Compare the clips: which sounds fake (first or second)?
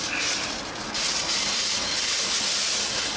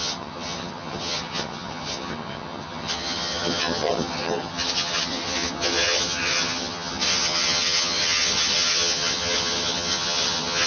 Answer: second